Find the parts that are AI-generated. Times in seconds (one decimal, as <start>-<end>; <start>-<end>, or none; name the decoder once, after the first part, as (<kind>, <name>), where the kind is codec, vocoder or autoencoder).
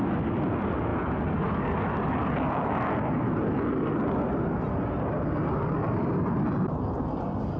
none